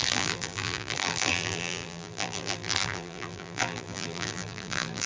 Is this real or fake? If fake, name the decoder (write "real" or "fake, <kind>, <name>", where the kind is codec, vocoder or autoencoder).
fake, vocoder, BigVGAN v2